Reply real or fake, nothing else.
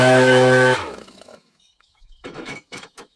fake